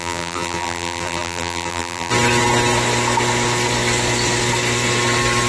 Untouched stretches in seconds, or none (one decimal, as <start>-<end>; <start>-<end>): 2.1-5.5

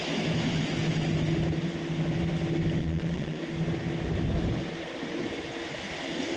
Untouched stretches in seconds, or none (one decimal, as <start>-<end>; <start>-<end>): 0.0-2.8; 3.4-6.4

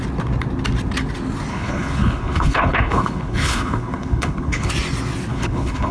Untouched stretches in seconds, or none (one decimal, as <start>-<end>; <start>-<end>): 0.0-1.5; 4.7-5.3

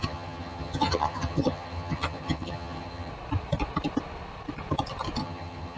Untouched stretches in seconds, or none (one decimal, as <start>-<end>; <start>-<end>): 3.1-5.2

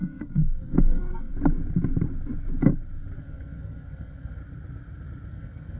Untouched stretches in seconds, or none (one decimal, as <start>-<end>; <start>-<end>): 1.3-3.2; 4.4-5.3

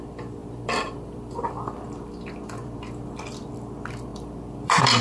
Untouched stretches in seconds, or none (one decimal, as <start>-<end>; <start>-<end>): 0.0-0.4; 3.2-4.1

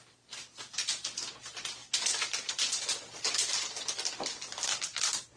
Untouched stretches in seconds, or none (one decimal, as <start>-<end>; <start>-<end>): 0.0-5.4